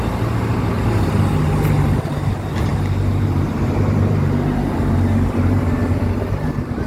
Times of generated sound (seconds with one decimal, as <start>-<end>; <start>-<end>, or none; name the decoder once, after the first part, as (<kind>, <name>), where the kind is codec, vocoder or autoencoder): 2.7-6.9 (vocoder, BigVGAN v2)